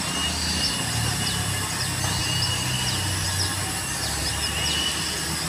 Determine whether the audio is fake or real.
real